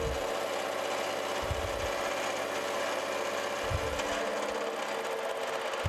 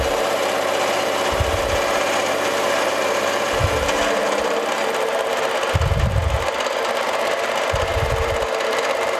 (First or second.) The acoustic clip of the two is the first